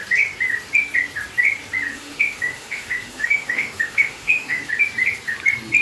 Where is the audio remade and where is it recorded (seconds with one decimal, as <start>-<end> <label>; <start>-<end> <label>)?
0.0-1.9 recorded; 1.9-4.7 remade; 4.7-5.8 recorded